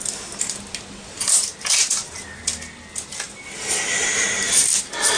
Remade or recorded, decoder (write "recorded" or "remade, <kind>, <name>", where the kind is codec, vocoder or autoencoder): recorded